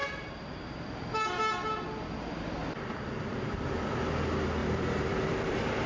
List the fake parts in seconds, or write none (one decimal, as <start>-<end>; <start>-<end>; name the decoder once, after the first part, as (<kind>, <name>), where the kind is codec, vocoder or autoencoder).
2.6-3.9 (vocoder, BigVGAN v2); 4.6-5.9